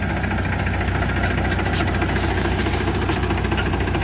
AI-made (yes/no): no